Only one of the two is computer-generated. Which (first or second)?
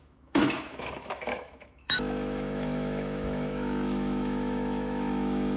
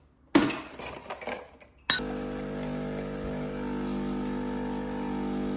first